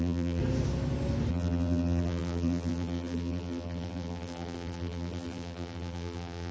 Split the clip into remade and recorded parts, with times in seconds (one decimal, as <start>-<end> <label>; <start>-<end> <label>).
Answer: 0.0-0.4 remade; 0.4-1.3 recorded; 1.3-6.5 remade